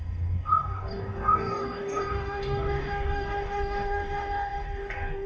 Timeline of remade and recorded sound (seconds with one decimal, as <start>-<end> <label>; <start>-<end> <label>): 0.0-5.3 remade